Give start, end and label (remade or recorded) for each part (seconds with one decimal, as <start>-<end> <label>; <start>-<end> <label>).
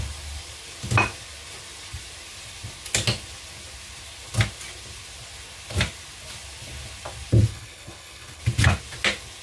0.0-7.5 recorded; 7.5-8.4 remade; 8.4-9.4 recorded